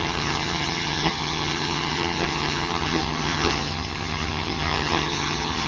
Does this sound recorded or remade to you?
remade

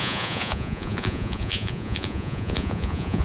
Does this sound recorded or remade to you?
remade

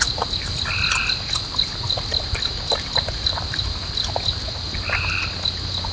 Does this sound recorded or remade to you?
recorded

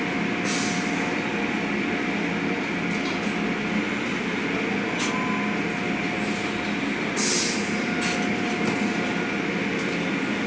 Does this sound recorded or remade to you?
recorded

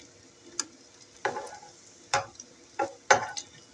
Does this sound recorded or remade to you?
recorded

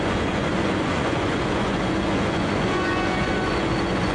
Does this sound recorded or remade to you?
remade